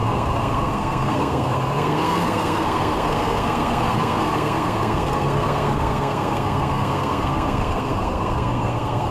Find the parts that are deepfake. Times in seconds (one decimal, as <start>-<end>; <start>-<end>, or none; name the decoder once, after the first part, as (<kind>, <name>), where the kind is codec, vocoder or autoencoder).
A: 0.0-9.1 (codec, SNAC)